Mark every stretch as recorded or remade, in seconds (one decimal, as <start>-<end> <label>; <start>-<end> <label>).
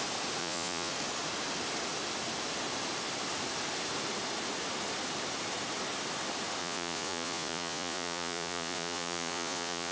0.0-0.4 recorded; 0.4-0.9 remade; 0.9-6.6 recorded; 6.6-9.9 remade